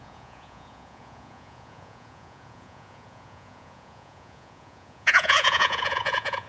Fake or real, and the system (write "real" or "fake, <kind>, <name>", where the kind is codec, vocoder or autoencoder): fake, vocoder, Vocos